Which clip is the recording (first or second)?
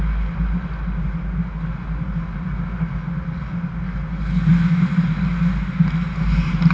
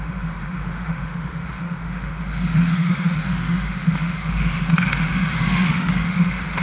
first